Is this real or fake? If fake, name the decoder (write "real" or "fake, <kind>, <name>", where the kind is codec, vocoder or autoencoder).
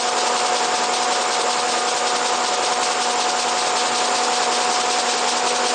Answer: real